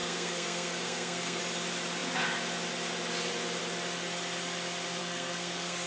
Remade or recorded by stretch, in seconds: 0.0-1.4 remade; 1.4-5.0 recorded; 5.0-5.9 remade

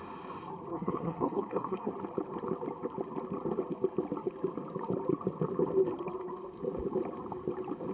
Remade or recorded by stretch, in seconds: 0.0-0.7 recorded; 0.7-1.9 remade; 1.9-7.9 recorded

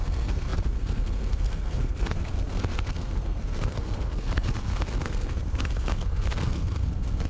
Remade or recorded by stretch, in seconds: 0.0-7.3 remade

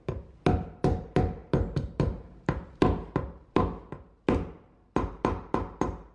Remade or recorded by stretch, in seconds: 0.0-6.1 recorded

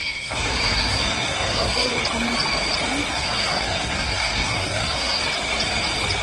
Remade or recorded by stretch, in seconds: 0.0-2.0 remade; 2.0-3.1 recorded; 3.1-5.2 remade; 5.2-6.2 recorded

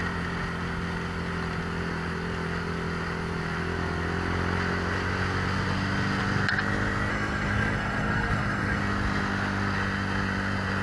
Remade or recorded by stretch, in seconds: 0.0-7.1 recorded; 7.1-8.8 remade; 8.8-10.8 recorded

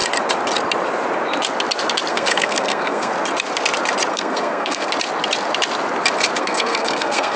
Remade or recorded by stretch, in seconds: 0.0-2.1 recorded; 2.1-3.1 remade; 3.1-4.1 recorded; 4.1-4.9 remade; 4.9-6.4 recorded; 6.4-7.4 remade

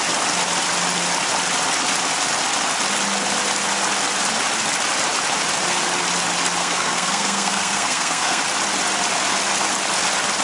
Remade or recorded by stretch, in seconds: 0.0-6.6 recorded; 6.6-8.4 remade; 8.4-10.4 recorded